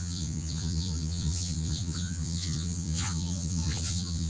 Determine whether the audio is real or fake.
fake